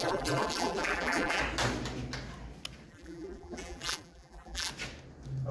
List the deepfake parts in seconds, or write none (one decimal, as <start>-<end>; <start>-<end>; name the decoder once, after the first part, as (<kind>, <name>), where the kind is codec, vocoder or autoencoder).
0.0-1.4 (vocoder, BigVGAN v2); 2.9-4.7